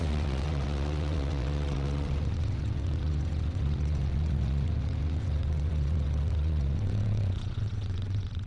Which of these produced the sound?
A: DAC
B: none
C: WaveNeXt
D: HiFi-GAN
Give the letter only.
C